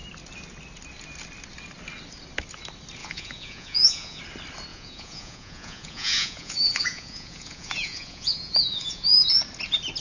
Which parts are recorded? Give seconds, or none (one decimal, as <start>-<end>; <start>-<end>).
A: 0.0-3.0; 4.2-4.7; 9.4-10.0